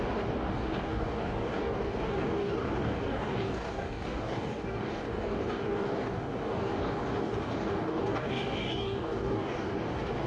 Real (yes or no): no